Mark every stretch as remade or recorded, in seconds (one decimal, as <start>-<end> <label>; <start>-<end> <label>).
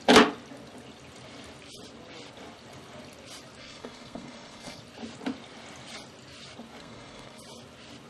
0.0-3.6 recorded; 3.6-4.8 remade; 4.8-6.8 recorded; 6.8-7.4 remade; 7.4-8.1 recorded